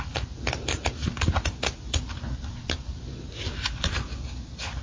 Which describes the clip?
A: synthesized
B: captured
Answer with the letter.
B